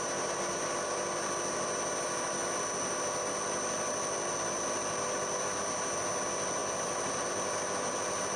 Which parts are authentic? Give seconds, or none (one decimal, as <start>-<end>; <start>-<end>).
0.0-8.4